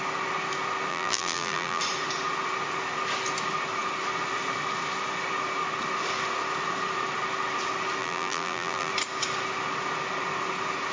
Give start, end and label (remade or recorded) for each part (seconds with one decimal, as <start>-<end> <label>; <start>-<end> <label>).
0.0-0.9 recorded; 0.9-1.8 remade; 1.8-8.0 recorded; 8.0-8.9 remade; 8.9-10.9 recorded